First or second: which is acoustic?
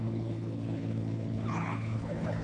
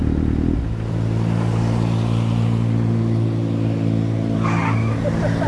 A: second